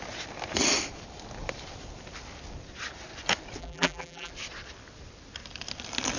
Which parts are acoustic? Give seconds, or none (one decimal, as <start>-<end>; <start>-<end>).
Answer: 0.0-3.6; 4.3-6.2